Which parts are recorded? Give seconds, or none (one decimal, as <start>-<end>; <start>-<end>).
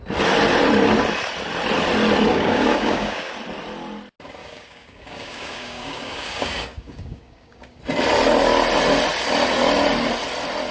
0.0-2.3; 3.3-4.4; 7.8-10.7